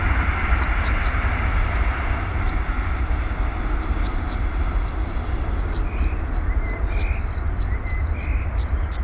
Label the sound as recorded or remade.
recorded